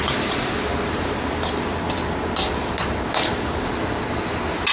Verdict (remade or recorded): recorded